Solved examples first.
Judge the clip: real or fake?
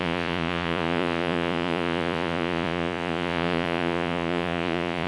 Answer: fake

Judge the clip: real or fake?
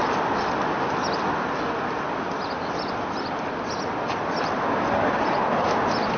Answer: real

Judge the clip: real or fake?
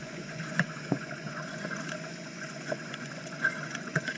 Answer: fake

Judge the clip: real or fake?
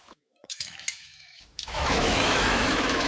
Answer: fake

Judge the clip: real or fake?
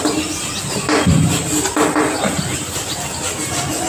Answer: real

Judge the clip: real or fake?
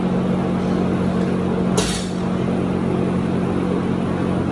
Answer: real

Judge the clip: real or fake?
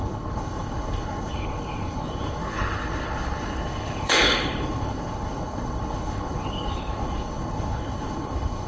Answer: fake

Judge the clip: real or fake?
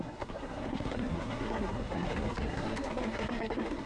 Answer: fake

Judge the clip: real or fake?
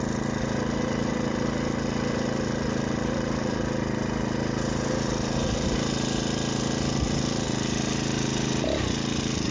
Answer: real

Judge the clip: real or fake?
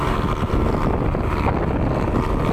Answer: real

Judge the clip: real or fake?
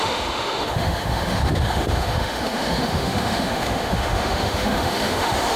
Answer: fake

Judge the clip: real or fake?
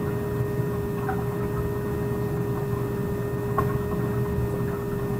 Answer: real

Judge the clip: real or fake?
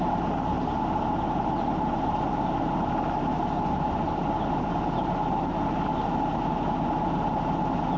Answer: real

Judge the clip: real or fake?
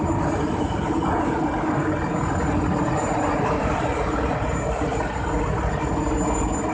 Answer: real